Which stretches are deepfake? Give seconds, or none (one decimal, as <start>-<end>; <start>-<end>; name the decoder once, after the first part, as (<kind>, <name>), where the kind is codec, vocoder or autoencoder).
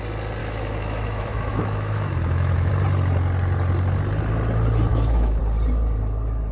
0.4-2.7 (autoencoder, DAC-VAE); 4.9-5.4